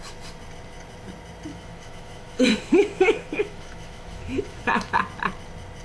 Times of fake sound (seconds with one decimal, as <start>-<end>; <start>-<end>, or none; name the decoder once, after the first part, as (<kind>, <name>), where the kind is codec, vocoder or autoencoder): 1.5-5.0 (autoencoder, DAC-VAE)